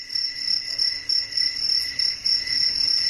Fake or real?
real